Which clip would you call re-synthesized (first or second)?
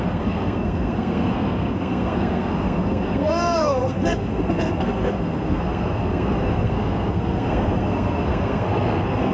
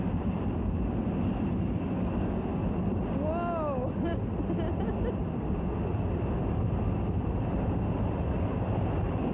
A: first